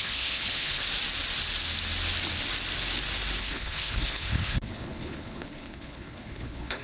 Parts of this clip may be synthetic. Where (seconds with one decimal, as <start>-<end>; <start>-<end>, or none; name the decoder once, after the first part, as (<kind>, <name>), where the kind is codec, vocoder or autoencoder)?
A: 0.0-0.8 (codec, HILCodec); 3.4-6.8